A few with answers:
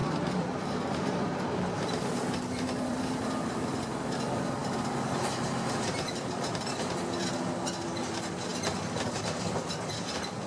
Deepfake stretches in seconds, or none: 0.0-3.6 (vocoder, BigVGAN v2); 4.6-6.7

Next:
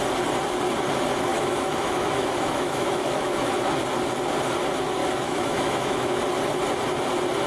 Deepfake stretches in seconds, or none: 1.3-3.5 (autoencoder, DAC-VAE); 5.0-6.2

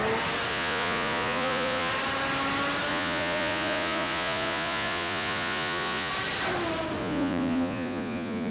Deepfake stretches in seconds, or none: 0.5-1.9 (vocoder, Vocos); 2.9-6.1; 7.0-8.5

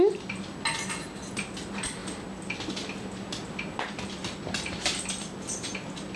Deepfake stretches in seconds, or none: none

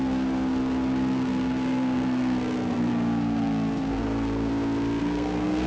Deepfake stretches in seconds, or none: 0.0-4.5 (codec, SNAC); 5.0-5.7

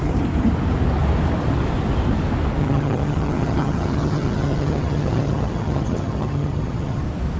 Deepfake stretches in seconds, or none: 2.6-7.0 (vocoder, HiFi-GAN)